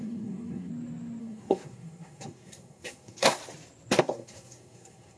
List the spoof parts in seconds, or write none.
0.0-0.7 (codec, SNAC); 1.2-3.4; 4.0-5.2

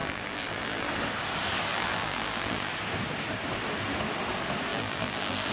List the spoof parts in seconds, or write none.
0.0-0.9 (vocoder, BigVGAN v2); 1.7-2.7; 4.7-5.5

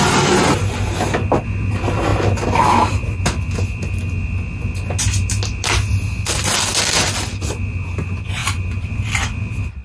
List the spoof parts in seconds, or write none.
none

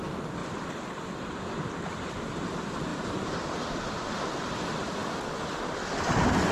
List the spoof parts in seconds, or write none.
none

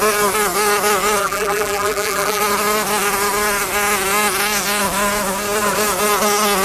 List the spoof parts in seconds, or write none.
1.2-2.4 (vocoder, BigVGAN v2)

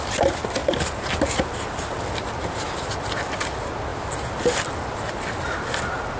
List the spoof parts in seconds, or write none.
none